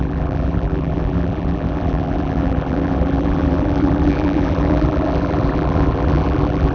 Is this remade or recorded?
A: remade